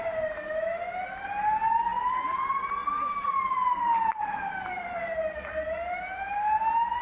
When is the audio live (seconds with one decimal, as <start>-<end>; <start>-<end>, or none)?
0.0-1.9; 6.0-7.0